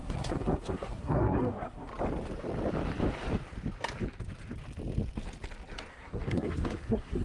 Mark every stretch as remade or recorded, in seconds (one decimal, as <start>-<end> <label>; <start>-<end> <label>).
0.0-1.9 remade; 1.9-5.9 recorded; 5.9-7.2 remade